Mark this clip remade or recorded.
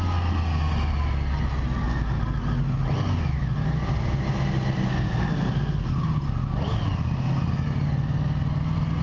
recorded